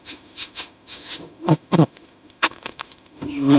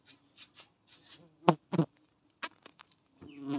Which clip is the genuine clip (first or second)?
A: second